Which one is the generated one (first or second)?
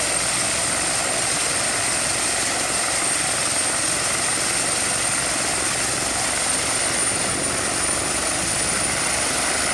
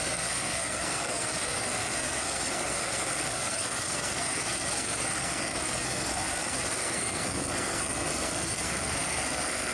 second